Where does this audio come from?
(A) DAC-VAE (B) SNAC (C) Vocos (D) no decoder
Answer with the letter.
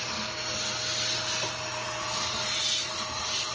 D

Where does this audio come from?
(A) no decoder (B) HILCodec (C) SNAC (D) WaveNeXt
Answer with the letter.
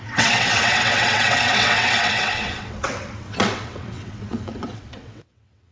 D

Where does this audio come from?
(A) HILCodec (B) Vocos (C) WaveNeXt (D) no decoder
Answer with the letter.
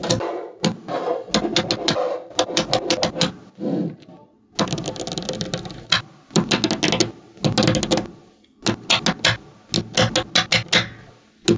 D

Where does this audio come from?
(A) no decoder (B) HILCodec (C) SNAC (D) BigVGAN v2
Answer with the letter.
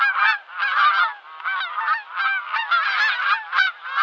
A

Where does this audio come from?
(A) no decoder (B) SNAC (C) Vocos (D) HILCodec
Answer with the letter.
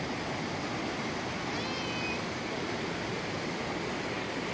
A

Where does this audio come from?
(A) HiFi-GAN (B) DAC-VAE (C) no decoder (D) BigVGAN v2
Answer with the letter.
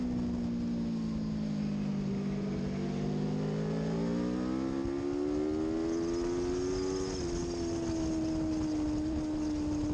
C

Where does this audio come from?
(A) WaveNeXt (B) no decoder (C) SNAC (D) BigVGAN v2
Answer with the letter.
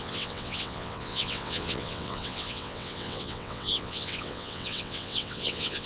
A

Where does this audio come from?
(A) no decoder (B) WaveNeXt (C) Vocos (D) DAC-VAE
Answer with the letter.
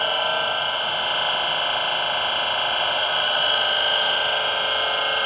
A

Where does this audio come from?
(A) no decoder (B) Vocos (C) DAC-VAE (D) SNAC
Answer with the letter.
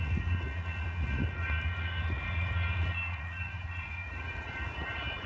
B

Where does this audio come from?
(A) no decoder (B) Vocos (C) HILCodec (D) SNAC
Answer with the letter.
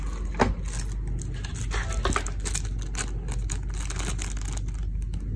A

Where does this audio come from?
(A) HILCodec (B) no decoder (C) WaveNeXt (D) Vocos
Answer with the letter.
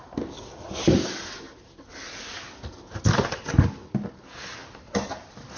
B